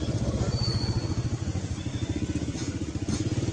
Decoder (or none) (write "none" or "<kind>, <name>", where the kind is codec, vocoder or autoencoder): vocoder, Vocos